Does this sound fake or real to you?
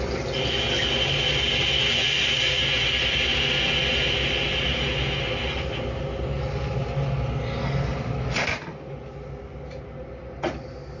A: real